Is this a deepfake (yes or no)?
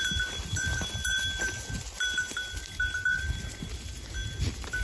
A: yes